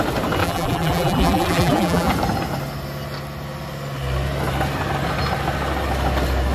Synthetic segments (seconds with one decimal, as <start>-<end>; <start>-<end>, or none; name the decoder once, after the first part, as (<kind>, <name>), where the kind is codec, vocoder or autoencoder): 0.4-2.1 (vocoder, BigVGAN v2)